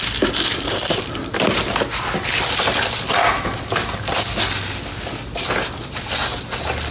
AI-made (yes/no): no